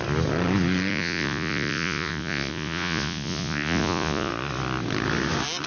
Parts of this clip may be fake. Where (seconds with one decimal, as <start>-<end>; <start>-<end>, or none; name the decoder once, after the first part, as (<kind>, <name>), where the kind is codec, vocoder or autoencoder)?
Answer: 0.9-4.3 (vocoder, Vocos)